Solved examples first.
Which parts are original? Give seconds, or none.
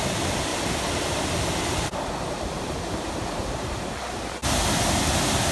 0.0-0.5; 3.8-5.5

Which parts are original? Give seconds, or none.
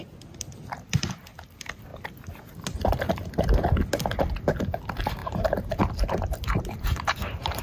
0.0-5.2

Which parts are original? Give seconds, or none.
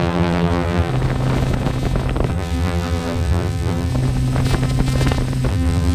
0.9-2.3; 3.9-5.5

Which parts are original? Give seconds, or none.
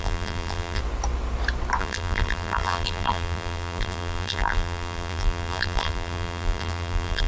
0.8-1.8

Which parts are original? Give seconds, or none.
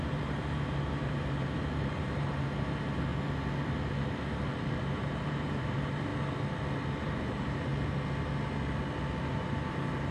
3.1-4.8; 6.1-7.0; 7.7-9.2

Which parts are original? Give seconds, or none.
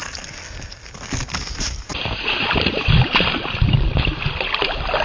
0.0-1.4; 1.9-2.7